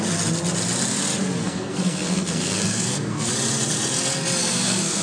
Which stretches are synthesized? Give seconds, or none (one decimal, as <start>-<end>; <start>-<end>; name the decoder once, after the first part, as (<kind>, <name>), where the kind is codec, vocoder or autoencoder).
1.4-3.3 (codec, SNAC); 4.4-5.0